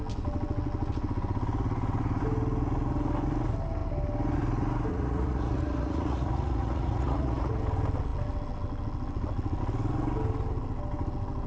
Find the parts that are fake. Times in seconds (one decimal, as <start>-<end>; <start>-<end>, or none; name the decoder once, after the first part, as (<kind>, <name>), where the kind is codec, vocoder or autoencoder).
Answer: 4.9-7.6 (vocoder, Vocos)